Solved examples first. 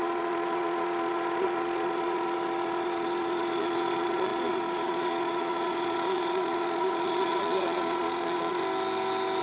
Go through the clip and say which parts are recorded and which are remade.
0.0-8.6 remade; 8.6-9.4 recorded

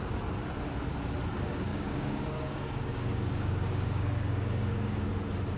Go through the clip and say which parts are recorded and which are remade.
0.0-1.7 recorded; 1.7-5.1 remade; 5.1-5.6 recorded

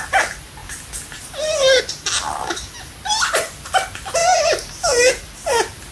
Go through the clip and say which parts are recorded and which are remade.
0.0-5.9 recorded

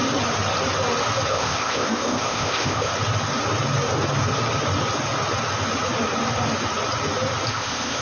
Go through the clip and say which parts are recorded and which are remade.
0.0-1.3 recorded; 1.3-2.9 remade; 2.9-7.5 recorded; 7.5-8.0 remade

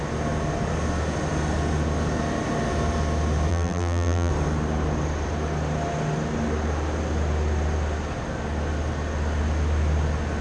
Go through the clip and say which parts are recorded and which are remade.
0.0-3.5 recorded; 3.5-4.3 remade; 4.3-10.4 recorded

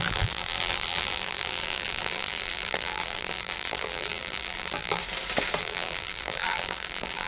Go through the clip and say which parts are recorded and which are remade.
0.0-5.0 remade; 5.0-5.6 recorded; 5.6-7.3 remade